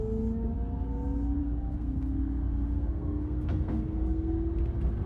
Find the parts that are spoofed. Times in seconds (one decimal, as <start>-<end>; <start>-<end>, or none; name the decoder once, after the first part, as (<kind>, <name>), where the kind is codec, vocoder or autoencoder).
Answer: 1.4-4.3 (codec, SNAC)